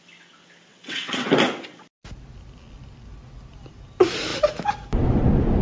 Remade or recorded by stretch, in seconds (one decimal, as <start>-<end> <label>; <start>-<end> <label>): 0.0-0.7 recorded; 0.7-1.3 remade; 1.3-5.6 recorded